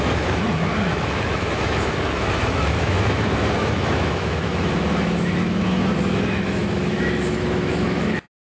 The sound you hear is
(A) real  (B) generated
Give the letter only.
B